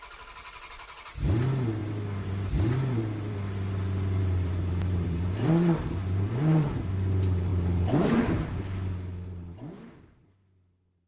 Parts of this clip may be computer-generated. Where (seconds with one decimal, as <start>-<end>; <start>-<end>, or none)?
1.8-6.9; 7.5-8.2